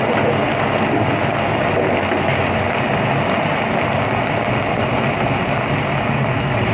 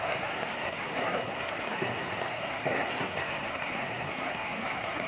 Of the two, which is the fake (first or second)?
second